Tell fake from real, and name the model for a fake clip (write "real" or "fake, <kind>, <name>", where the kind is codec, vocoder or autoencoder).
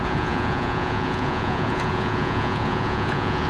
fake, vocoder, Vocos